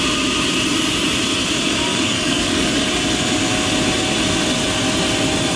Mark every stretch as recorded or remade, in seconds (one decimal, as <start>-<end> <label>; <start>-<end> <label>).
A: 0.0-1.9 recorded; 1.9-2.8 remade; 2.8-5.6 recorded